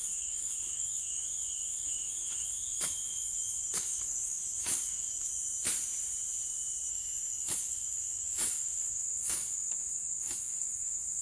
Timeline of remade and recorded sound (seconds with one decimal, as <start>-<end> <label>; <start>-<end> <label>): 0.0-5.3 remade; 5.3-6.9 recorded; 6.9-11.2 remade